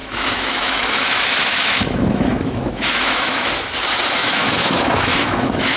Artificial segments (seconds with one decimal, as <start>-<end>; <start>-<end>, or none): 0.0-3.5; 4.2-5.8